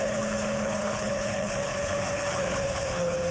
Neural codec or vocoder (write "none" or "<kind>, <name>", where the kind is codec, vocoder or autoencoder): codec, HILCodec